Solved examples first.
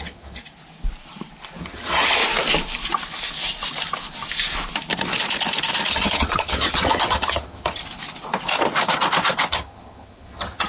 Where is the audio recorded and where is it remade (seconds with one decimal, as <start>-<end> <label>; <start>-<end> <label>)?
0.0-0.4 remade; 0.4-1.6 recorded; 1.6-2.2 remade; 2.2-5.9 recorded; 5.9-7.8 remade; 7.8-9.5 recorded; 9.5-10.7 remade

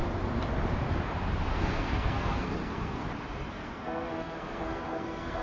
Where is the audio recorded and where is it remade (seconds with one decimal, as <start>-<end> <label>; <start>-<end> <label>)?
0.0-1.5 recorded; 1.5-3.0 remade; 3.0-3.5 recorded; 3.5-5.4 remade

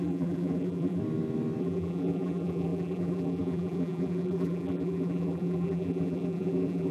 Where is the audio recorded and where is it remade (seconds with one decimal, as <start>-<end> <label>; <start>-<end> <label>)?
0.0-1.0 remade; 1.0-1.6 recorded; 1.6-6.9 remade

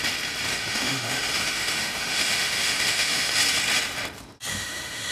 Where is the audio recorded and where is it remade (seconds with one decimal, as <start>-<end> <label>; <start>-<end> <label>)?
0.0-0.5 recorded; 0.5-3.3 remade; 3.3-4.5 recorded; 4.5-5.1 remade